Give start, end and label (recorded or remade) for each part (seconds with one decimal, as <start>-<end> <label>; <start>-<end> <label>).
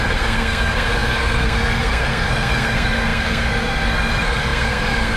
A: 0.0-5.2 remade